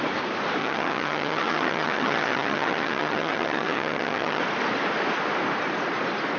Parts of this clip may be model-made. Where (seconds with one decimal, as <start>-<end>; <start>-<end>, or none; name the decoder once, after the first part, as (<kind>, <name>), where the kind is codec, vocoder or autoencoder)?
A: 0.6-4.4 (vocoder, HiFi-GAN)